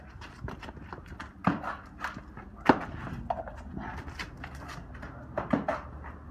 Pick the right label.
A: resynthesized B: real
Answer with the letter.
B